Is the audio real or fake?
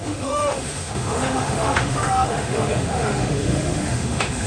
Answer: fake